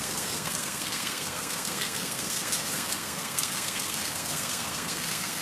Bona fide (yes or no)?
no